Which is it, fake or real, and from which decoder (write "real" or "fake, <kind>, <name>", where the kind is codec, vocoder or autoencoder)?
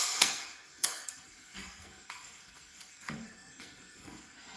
fake, codec, SNAC